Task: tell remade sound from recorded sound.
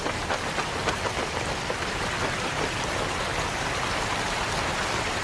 recorded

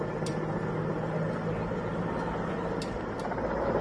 recorded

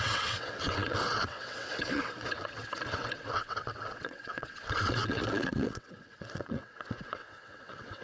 remade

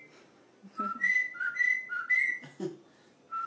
recorded